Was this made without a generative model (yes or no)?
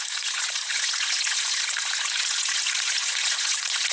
no